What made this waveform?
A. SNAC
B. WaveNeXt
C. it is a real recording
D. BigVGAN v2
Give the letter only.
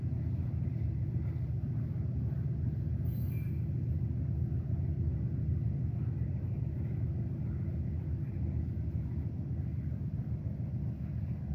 C